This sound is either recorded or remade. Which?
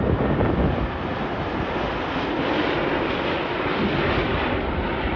recorded